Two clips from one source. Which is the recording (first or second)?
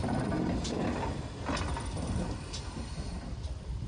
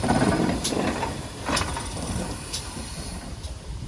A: first